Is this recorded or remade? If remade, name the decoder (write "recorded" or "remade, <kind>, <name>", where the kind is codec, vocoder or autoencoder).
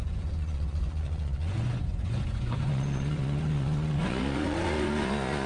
remade, vocoder, Vocos